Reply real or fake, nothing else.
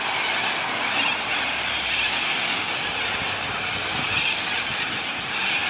real